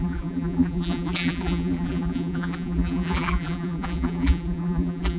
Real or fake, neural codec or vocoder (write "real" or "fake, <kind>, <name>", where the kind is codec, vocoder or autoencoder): fake, vocoder, BigVGAN v2